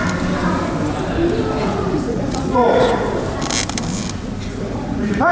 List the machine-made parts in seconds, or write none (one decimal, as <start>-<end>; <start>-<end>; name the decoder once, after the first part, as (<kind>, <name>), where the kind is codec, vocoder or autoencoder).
1.6-3.1 (vocoder, Vocos); 4.5-5.3